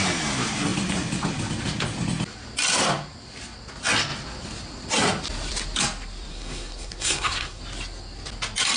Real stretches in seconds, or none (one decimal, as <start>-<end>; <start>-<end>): 0.0-6.3; 7.6-8.8